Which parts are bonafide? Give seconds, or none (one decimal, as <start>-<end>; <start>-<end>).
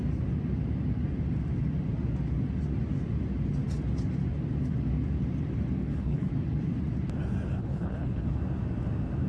0.0-5.8; 6.3-7.6; 8.4-9.3